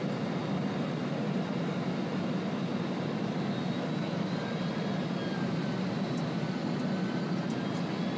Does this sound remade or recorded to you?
recorded